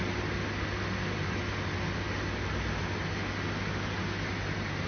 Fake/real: real